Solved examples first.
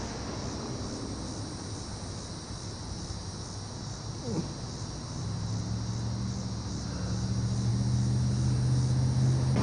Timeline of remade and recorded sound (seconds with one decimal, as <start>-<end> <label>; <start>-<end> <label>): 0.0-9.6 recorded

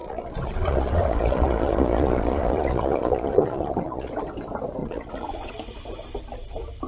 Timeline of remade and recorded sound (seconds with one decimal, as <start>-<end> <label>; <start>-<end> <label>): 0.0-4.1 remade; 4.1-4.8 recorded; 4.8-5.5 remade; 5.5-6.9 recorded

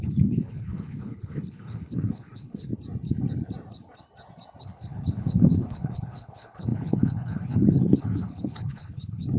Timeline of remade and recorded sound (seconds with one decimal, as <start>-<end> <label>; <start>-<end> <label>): 0.0-2.7 remade; 2.7-4.6 recorded; 4.6-9.4 remade